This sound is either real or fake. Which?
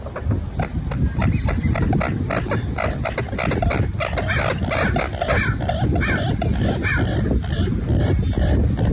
real